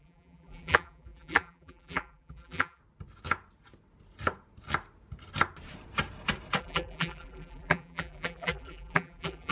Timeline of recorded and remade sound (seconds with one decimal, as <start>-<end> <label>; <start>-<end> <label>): 0.0-2.8 remade; 2.8-6.6 recorded; 6.6-9.5 remade

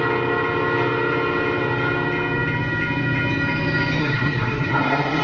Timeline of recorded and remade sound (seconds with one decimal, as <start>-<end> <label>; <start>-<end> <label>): 0.0-4.0 recorded; 4.0-5.2 remade

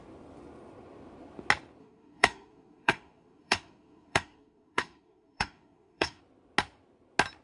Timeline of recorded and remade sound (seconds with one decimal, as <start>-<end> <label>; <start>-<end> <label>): 0.0-1.8 recorded; 1.8-6.2 remade; 6.2-7.4 recorded

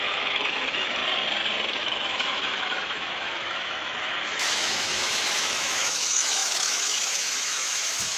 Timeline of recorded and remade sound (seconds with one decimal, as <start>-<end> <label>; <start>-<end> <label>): 0.0-1.0 remade; 1.0-1.8 recorded; 1.8-8.2 remade

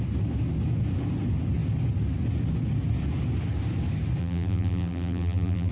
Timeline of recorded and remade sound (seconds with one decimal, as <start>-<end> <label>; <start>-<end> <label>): 0.0-4.2 recorded; 4.2-5.7 remade

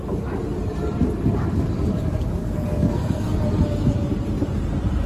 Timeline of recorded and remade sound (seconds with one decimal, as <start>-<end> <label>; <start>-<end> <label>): 0.0-2.4 recorded; 2.4-3.4 remade; 3.4-5.1 recorded

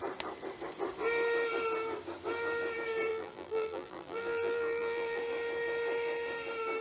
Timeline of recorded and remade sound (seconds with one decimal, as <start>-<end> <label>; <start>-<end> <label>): 0.0-3.1 recorded; 3.1-5.2 remade; 5.2-6.8 recorded